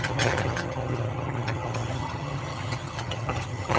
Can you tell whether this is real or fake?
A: fake